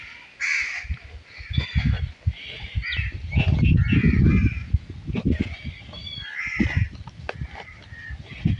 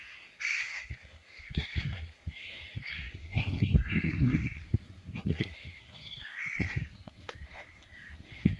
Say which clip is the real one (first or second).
first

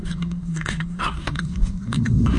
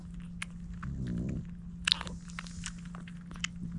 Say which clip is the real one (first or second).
second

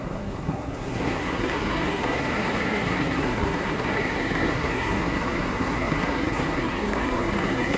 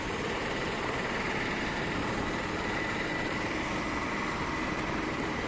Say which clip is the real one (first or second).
second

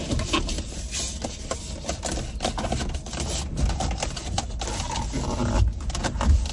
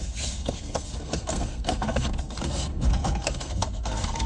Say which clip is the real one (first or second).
first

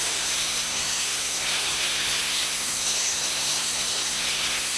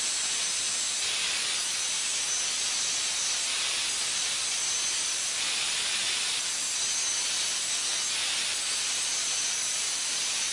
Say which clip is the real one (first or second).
second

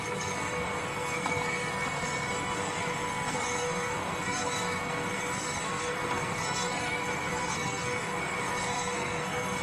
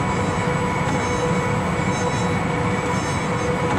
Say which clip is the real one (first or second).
second